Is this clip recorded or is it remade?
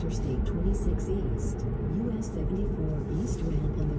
recorded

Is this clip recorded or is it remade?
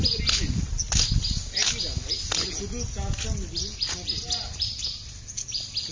recorded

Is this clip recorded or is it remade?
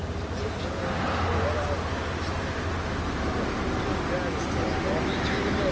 recorded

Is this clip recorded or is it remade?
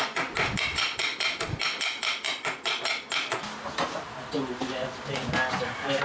recorded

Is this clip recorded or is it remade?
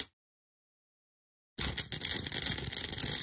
recorded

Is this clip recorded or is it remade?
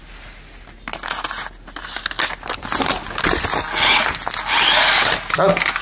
recorded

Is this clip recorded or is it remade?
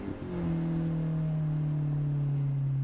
recorded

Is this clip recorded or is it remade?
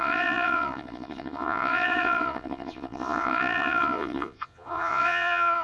remade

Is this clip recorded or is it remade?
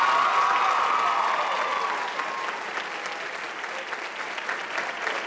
recorded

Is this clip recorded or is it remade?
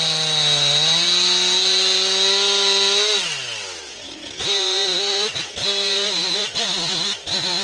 recorded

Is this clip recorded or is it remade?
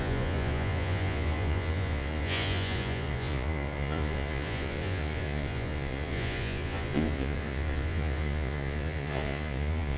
remade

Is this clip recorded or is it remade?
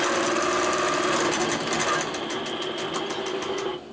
recorded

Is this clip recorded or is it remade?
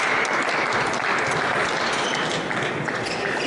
recorded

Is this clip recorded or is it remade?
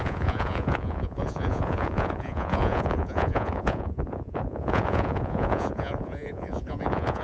remade